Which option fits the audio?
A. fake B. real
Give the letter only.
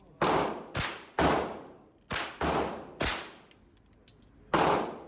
B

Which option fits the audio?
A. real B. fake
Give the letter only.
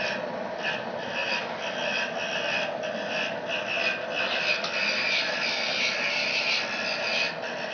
A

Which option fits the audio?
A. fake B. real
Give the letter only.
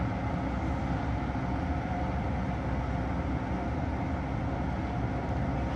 B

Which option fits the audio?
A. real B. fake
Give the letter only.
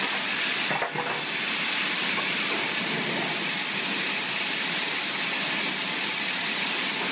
A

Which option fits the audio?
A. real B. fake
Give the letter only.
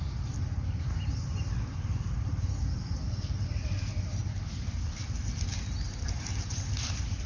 B